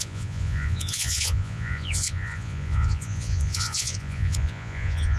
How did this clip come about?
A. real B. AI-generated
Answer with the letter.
B